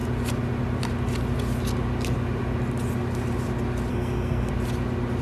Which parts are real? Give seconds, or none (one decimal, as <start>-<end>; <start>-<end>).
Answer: 0.0-3.9; 4.5-5.2